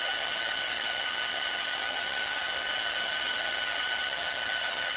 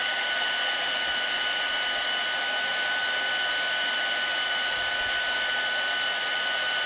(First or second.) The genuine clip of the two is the second